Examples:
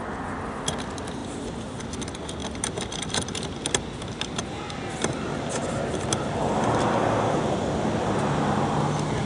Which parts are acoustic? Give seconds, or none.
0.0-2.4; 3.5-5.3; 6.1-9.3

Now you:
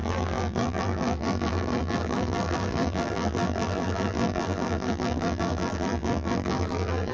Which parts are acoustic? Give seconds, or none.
none

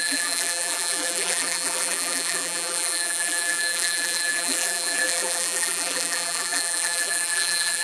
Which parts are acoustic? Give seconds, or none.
none

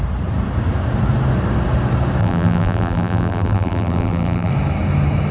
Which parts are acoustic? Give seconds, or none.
0.0-2.2; 4.5-5.3

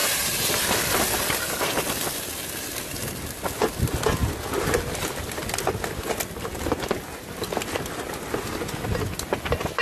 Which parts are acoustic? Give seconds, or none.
0.8-9.8